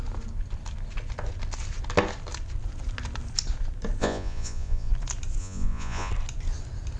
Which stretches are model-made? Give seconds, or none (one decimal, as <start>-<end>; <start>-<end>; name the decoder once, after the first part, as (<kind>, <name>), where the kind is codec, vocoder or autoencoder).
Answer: 4.0-4.9 (vocoder, Vocos); 5.4-6.1